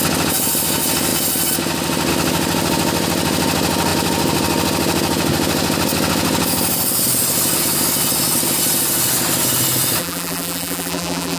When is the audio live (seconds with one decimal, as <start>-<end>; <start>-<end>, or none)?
0.0-10.0